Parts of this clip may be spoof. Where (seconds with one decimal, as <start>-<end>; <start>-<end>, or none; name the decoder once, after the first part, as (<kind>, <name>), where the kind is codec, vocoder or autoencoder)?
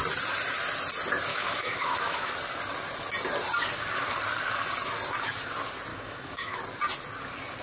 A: 1.3-2.3 (autoencoder, DAC-VAE); 5.9-6.6